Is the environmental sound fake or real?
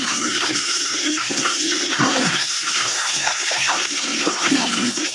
fake